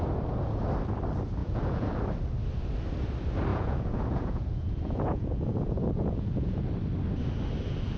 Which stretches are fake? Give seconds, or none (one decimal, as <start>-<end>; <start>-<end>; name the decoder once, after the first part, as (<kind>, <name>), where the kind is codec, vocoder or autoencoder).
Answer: 1.4-2.0 (vocoder, Vocos); 3.5-6.6